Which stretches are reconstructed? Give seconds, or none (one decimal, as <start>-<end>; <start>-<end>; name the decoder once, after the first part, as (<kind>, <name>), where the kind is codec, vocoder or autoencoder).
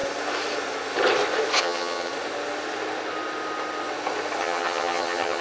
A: 1.6-2.1 (vocoder, HiFi-GAN); 4.4-5.4